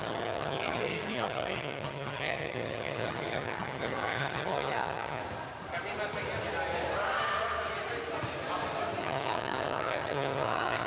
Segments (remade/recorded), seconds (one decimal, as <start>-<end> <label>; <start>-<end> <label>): 0.0-5.2 remade; 5.2-9.0 recorded; 9.0-10.9 remade